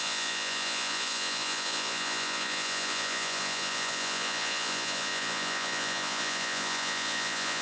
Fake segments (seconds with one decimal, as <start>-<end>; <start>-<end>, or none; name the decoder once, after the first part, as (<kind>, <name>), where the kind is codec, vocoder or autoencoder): 0.0-7.6 (vocoder, Vocos)